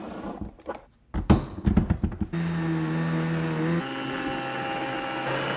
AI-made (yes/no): no